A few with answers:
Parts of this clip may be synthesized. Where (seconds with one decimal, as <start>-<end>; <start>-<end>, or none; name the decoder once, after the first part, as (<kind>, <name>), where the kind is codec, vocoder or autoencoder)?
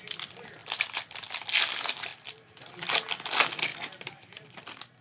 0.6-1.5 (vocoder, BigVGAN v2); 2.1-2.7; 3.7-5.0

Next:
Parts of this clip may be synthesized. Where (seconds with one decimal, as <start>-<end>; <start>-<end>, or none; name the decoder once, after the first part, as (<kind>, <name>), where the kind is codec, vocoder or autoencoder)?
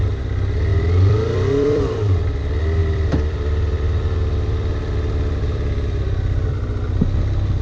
0.7-2.4 (vocoder, BigVGAN v2); 2.8-6.5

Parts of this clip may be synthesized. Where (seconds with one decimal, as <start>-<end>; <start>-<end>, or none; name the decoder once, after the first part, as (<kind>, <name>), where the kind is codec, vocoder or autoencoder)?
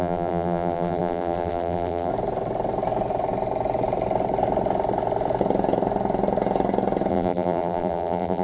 0.0-2.1 (vocoder, BigVGAN v2); 7.1-8.4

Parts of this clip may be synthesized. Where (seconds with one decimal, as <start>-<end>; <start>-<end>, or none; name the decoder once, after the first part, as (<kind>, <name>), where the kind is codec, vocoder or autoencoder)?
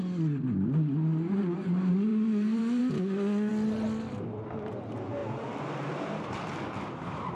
2.1-2.8 (vocoder, BigVGAN v2); 5.2-7.3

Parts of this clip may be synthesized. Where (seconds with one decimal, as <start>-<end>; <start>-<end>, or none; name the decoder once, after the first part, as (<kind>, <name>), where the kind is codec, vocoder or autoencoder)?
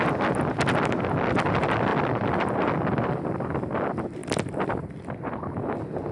1.5-6.1 (vocoder, BigVGAN v2)